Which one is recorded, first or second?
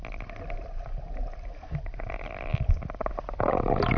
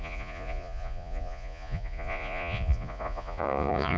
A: first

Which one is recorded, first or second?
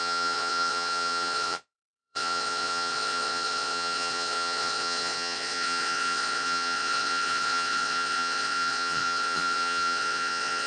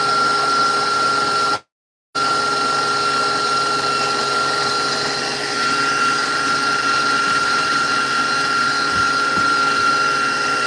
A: second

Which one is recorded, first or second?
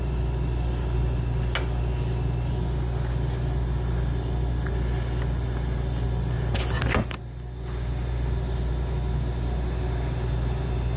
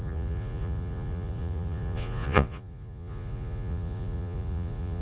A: first